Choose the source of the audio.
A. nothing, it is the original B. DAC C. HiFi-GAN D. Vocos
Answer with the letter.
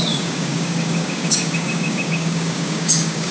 B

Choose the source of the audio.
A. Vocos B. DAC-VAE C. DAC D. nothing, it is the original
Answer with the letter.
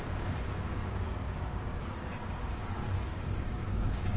C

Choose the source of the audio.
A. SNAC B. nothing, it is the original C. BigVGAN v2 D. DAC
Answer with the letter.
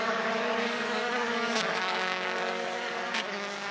D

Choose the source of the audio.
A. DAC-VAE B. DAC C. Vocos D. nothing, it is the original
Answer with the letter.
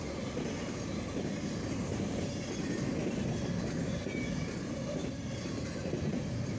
D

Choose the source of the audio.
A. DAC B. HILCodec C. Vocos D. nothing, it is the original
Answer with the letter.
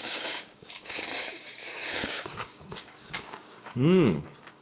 A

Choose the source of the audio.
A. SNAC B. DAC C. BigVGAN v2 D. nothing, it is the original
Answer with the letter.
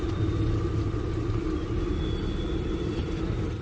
D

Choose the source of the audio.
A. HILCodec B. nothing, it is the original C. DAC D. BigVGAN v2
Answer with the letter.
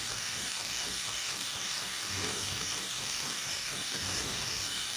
C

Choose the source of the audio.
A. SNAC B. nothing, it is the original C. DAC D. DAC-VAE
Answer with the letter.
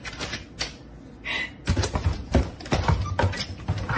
B